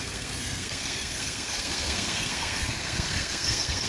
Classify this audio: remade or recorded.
remade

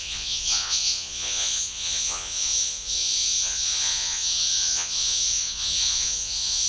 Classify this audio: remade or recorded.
remade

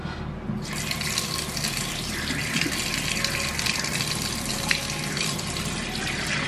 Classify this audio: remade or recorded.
recorded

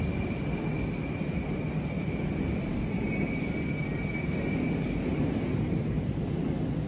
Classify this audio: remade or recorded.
recorded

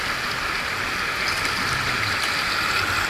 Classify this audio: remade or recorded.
recorded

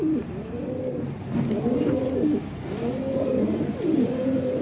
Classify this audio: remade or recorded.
recorded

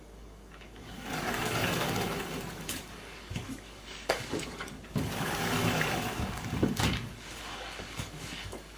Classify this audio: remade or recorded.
remade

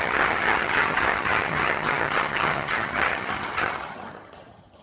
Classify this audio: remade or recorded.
remade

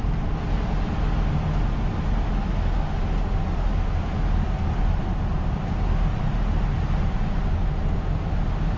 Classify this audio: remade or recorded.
recorded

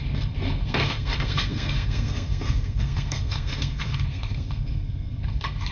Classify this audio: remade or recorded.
remade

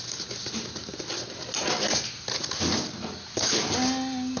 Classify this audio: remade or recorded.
recorded